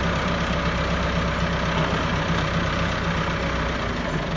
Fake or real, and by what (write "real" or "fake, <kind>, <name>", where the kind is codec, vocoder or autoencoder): real